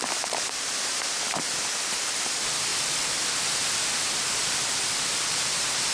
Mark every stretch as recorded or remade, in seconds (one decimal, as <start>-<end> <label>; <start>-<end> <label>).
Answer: 0.0-5.9 remade